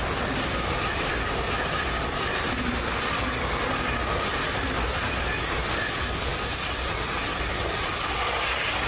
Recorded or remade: recorded